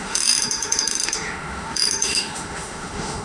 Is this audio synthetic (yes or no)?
yes